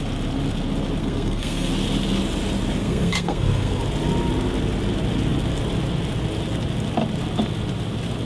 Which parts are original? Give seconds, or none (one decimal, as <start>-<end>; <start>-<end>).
0.0-1.0; 1.7-2.8; 3.8-8.3